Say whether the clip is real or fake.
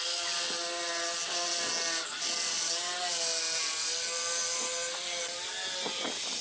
real